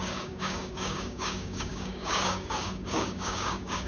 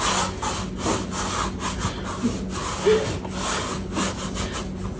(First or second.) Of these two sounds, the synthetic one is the first